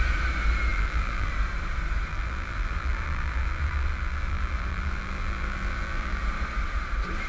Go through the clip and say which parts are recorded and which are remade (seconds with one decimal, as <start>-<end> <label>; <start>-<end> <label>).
0.0-0.7 recorded; 0.7-1.3 remade; 1.3-2.1 recorded; 2.1-6.2 remade; 6.2-7.3 recorded